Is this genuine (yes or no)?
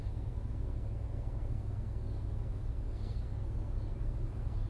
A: no